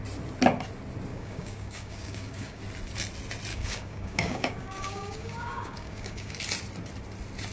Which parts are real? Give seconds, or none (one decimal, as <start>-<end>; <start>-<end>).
0.0-1.1; 2.6-3.5; 6.4-7.5